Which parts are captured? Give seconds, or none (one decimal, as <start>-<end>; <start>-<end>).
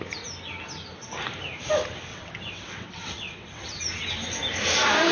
0.0-2.1; 3.8-5.1